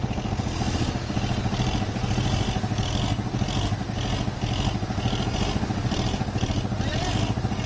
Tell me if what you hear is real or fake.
real